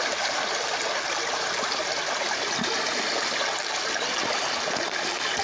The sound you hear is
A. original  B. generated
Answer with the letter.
A